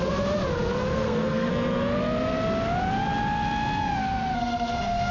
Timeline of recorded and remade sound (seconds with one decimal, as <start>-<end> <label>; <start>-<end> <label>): 0.0-0.9 recorded; 0.9-1.5 remade; 1.5-4.0 recorded; 4.0-5.1 remade